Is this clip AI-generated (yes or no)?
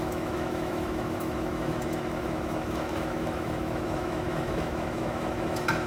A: yes